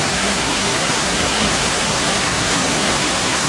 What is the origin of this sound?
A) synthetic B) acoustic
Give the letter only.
A